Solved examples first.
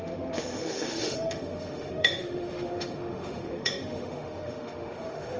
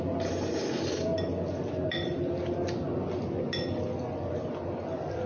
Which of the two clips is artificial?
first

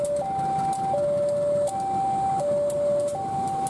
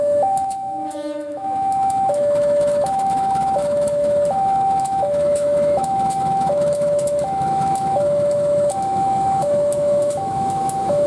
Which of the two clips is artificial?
second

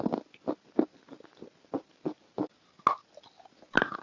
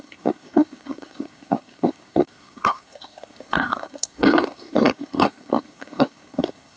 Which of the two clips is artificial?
second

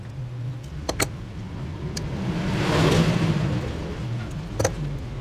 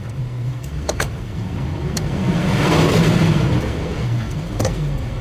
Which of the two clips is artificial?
second